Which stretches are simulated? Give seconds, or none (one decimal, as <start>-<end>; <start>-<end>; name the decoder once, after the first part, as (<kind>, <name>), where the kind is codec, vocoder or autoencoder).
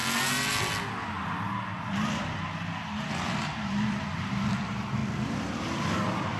3.8-5.0 (vocoder, BigVGAN v2); 5.6-6.4